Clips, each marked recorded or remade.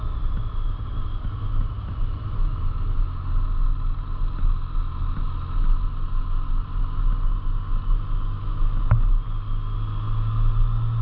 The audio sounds recorded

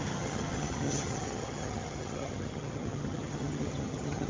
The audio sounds remade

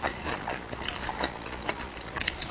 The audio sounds remade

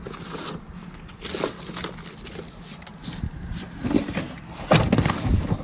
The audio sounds recorded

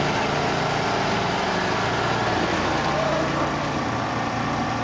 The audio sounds recorded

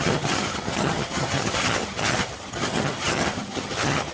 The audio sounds remade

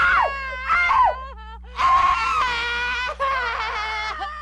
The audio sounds recorded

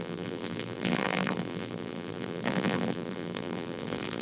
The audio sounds remade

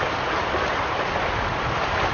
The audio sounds recorded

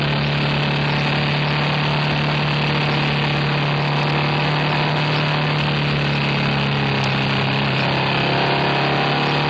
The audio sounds recorded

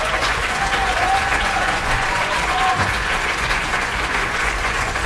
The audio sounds remade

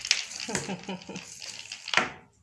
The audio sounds recorded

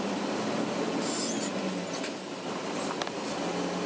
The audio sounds recorded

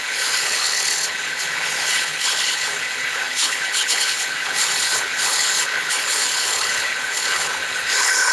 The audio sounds remade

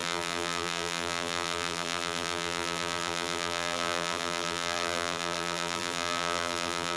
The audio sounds remade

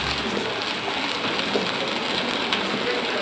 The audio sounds recorded